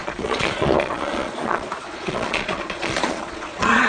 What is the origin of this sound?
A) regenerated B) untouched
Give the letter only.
A